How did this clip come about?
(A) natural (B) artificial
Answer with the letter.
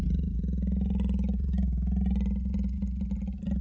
A